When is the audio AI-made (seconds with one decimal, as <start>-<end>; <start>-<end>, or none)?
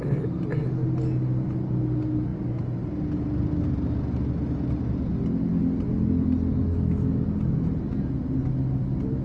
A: none